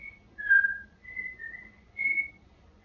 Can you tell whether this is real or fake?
fake